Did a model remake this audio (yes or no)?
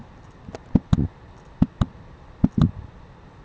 no